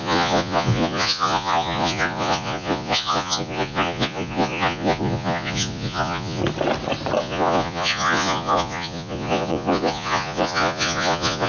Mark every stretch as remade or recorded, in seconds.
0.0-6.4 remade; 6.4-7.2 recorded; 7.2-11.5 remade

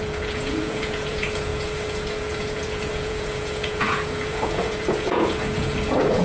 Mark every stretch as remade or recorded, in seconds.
0.0-6.2 remade

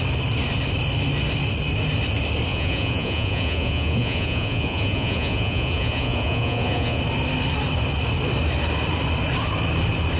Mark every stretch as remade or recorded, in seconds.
0.0-2.5 recorded; 2.5-7.0 remade; 7.0-10.2 recorded

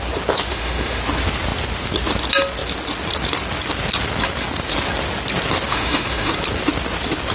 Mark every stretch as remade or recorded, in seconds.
0.0-0.5 recorded; 0.5-1.0 remade; 1.0-5.7 recorded; 5.7-6.3 remade; 6.3-7.3 recorded

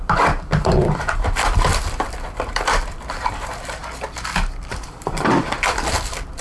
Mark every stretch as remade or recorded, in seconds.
0.0-3.8 remade; 3.8-4.5 recorded; 4.5-6.4 remade

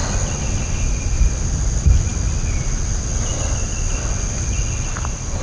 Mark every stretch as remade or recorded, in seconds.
0.0-5.4 recorded

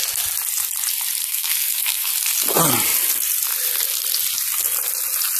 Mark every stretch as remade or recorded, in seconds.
0.0-1.2 recorded; 1.2-2.1 remade; 2.1-5.4 recorded